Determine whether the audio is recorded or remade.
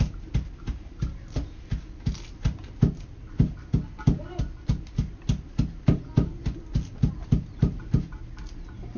recorded